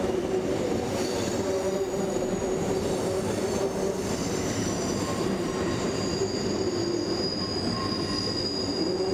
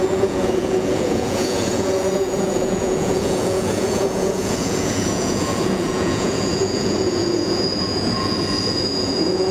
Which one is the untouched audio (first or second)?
first